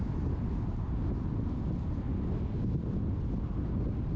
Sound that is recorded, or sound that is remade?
recorded